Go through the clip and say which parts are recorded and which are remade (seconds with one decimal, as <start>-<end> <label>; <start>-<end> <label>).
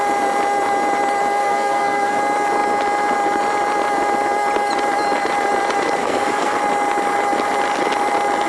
0.0-1.4 recorded; 1.4-2.2 remade; 2.2-6.0 recorded; 6.0-6.6 remade; 6.6-8.5 recorded